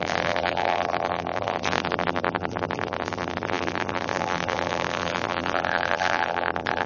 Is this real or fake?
fake